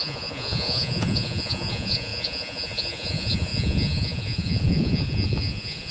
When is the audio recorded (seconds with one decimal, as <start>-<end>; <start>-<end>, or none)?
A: none